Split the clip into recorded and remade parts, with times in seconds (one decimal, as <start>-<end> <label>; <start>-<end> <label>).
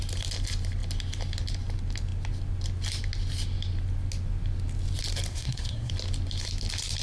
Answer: 0.0-5.3 recorded; 5.3-5.9 remade; 5.9-7.0 recorded